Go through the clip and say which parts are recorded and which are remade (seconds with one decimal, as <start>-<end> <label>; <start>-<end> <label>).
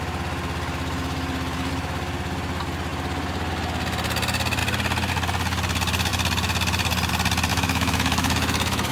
0.0-7.5 recorded; 7.5-8.9 remade